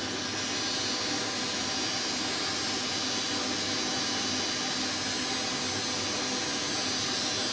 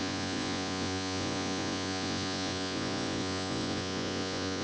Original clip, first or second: first